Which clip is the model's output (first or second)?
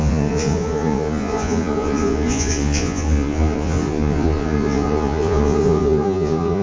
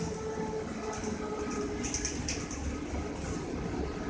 first